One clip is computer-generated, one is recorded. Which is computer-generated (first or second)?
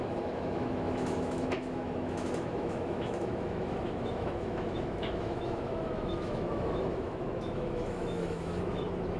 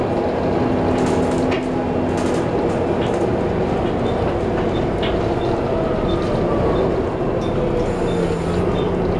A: first